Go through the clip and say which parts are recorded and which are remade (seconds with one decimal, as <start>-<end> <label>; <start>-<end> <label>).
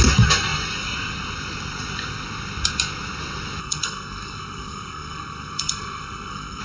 0.0-3.6 recorded; 3.6-6.6 remade